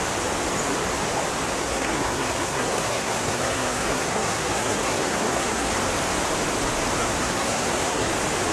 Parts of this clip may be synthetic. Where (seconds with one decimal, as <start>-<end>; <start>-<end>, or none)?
1.6-5.7; 7.0-8.1